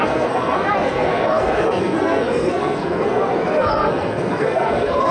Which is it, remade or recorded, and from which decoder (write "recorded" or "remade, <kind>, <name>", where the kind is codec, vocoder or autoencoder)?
remade, codec, SNAC